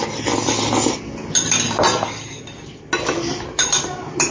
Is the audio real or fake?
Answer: real